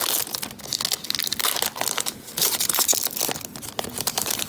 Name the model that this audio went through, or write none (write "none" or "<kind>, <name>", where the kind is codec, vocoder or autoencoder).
none